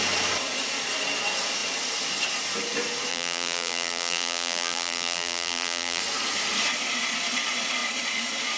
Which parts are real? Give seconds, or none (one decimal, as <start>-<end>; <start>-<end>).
0.0-3.1; 6.0-8.6